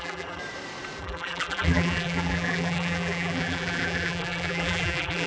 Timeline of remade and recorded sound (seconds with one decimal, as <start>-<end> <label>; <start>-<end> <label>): 0.0-0.4 remade; 0.4-1.0 recorded; 1.0-5.3 remade